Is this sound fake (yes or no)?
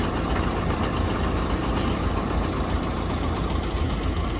no